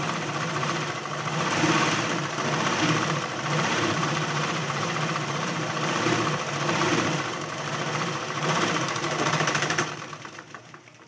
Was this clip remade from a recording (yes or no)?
yes